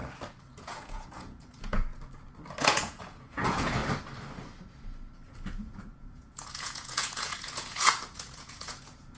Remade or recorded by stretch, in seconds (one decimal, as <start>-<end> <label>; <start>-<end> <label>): 0.0-0.5 recorded; 0.5-1.9 remade; 1.9-2.6 recorded; 2.6-3.8 remade; 3.8-5.5 recorded; 5.5-9.2 remade